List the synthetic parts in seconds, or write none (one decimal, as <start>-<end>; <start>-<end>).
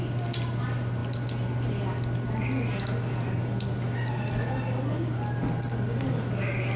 none